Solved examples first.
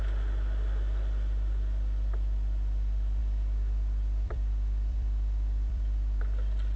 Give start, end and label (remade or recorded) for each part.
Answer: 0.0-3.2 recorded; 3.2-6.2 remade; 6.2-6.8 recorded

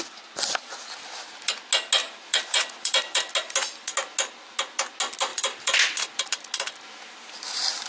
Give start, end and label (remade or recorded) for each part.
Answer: 0.0-2.0 recorded; 2.0-3.3 remade; 3.3-5.3 recorded; 5.3-6.2 remade; 6.2-7.9 recorded